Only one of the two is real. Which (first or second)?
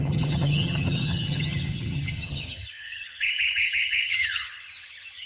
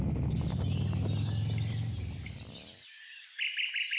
second